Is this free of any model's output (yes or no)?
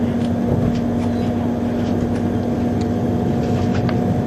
yes